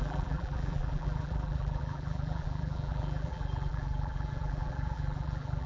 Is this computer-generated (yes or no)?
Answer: yes